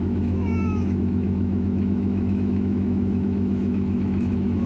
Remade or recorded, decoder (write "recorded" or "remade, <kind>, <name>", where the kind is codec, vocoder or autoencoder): remade, autoencoder, DAC-VAE